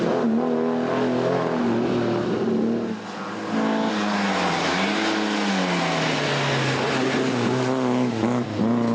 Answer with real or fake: real